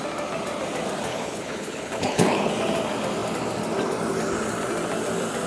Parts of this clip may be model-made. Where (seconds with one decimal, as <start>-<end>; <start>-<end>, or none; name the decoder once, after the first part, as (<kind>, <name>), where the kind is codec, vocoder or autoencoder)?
1.1-2.5 (codec, HILCodec)